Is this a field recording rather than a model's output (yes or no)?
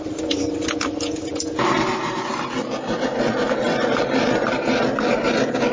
yes